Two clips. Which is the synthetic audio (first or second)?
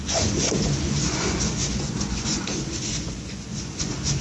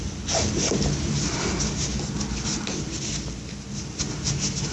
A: first